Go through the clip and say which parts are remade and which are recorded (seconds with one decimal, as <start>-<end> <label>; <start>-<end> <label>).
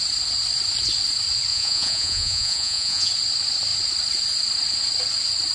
0.0-1.5 recorded; 1.5-3.1 remade; 3.1-5.5 recorded